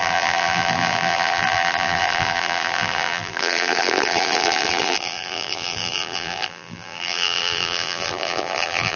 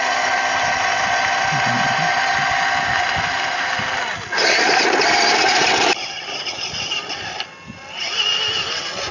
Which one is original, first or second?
second